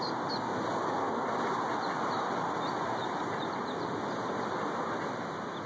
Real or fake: real